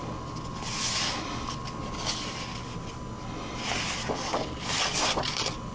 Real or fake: real